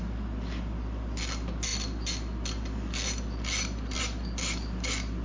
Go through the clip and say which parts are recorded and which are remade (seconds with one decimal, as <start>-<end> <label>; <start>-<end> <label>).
0.0-5.2 recorded